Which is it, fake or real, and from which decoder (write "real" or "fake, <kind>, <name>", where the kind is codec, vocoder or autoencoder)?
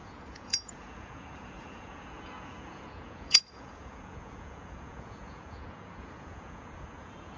fake, vocoder, Vocos